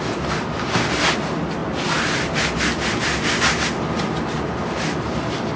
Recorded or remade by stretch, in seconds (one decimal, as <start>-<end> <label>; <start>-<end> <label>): 0.0-5.6 recorded